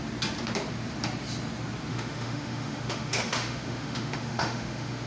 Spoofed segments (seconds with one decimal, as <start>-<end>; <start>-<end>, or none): 1.9-5.1